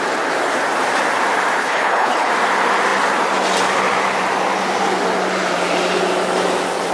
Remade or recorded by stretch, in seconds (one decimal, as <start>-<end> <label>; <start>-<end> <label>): 0.0-1.6 recorded; 1.6-2.3 remade; 2.3-6.9 recorded